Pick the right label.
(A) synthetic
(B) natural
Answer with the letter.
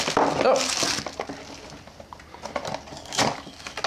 B